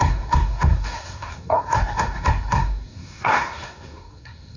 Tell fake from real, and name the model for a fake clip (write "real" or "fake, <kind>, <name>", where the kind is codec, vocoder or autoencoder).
fake, codec, SNAC